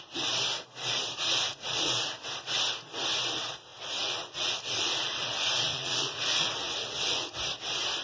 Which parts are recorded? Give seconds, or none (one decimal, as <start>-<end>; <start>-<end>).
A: 0.0-1.1; 1.9-3.7; 7.4-8.0